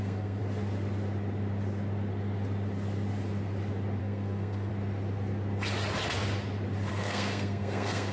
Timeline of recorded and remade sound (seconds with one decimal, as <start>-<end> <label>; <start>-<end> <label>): 0.0-0.4 remade; 0.4-4.0 recorded; 4.0-4.7 remade; 4.7-6.9 recorded; 6.9-8.1 remade